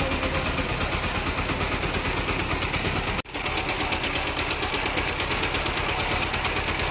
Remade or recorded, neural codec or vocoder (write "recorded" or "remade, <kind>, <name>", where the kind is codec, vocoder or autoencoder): recorded